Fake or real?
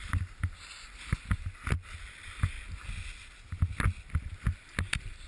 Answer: real